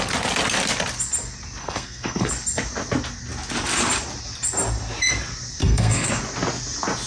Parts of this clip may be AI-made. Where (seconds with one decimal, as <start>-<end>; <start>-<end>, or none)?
1.6-2.3; 5.6-6.2